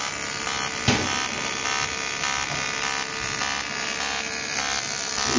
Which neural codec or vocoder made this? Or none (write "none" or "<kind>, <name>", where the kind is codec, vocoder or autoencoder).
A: none